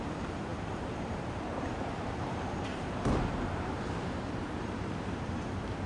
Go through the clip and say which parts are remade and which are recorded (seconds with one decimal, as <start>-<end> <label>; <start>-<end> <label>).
0.0-5.9 remade